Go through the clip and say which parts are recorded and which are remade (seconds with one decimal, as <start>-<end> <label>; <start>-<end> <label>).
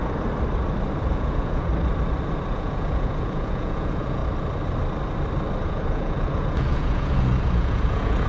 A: 0.0-1.1 recorded; 1.1-1.7 remade; 1.7-2.5 recorded; 2.5-4.2 remade; 4.2-5.6 recorded; 5.6-8.3 remade